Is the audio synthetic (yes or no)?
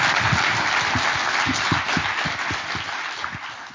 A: no